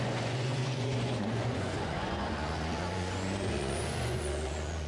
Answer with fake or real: fake